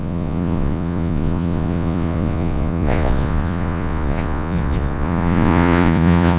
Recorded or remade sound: remade